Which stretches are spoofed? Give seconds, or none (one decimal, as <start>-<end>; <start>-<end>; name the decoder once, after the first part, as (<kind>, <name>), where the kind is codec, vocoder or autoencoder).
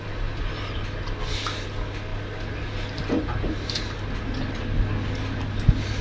none